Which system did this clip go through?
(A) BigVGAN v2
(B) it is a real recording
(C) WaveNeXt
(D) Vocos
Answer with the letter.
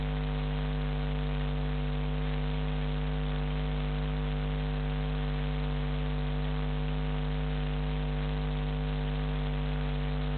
B